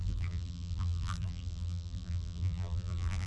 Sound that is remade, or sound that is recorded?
remade